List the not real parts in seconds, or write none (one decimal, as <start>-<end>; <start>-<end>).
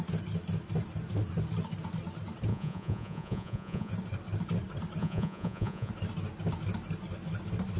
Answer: 2.5-3.9; 5.0-5.9